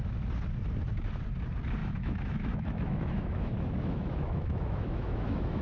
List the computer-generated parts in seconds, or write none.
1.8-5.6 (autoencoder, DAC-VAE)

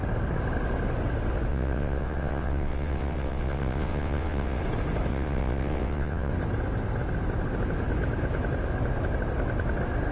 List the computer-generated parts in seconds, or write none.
1.5-4.6 (vocoder, WaveNeXt); 5.1-6.3

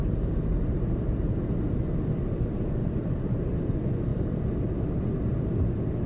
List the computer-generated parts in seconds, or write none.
0.0-1.0 (vocoder, BigVGAN v2); 2.8-3.4; 4.1-4.8

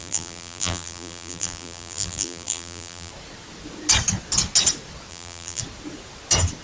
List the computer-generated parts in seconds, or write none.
0.0-3.1 (vocoder, BigVGAN v2); 5.1-5.6

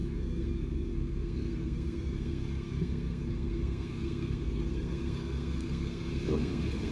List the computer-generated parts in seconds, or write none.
0.0-6.9 (codec, SNAC)

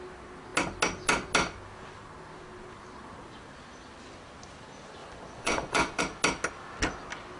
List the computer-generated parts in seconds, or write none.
5.0-6.0 (vocoder, Vocos)

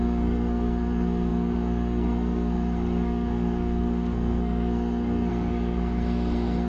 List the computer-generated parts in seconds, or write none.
0.0-6.7 (codec, SNAC)

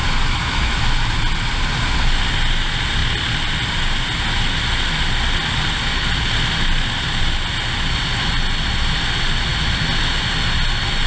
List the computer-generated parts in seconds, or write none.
0.0-0.8 (autoencoder, DAC-VAE)